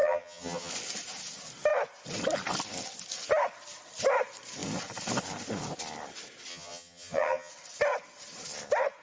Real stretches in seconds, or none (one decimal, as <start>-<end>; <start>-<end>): 0.7-6.5; 7.5-9.0